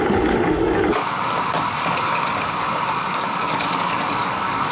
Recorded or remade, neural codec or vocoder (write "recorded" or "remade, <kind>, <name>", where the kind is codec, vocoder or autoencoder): remade, codec, DAC